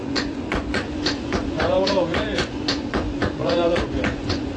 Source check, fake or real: fake